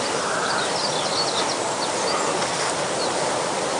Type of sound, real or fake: real